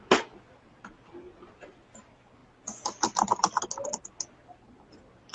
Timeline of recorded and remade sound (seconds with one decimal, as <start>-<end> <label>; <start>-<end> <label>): 0.0-5.3 recorded